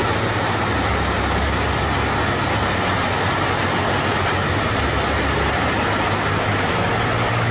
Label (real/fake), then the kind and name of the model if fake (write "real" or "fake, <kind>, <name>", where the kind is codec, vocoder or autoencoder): real